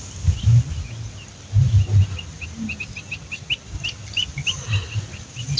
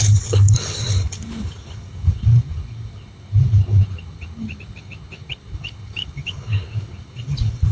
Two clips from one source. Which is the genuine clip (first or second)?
first